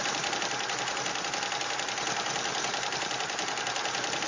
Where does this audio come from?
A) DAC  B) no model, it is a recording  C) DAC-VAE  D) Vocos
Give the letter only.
B